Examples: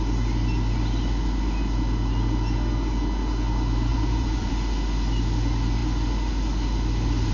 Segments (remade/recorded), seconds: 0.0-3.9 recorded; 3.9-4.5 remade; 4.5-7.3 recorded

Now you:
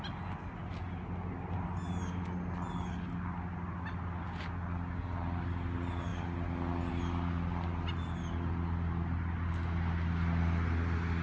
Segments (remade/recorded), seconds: 0.0-11.2 recorded

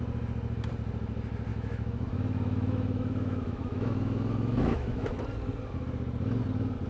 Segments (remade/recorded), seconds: 0.0-1.5 recorded; 1.5-5.2 remade; 5.2-6.9 recorded

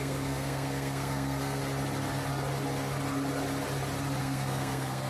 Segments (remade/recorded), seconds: 0.0-1.6 remade; 1.6-4.2 recorded; 4.2-5.1 remade

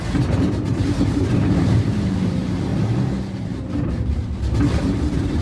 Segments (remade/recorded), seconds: 0.0-2.7 remade; 2.7-3.4 recorded; 3.4-4.2 remade; 4.2-4.8 recorded; 4.8-5.4 remade

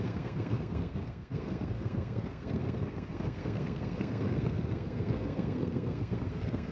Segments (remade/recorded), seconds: 0.0-6.7 remade

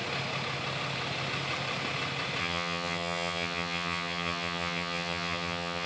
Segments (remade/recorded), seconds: 0.0-2.4 recorded; 2.4-5.9 remade